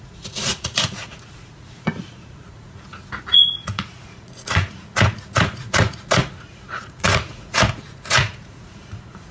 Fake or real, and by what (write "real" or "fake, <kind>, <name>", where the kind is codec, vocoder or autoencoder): fake, vocoder, Vocos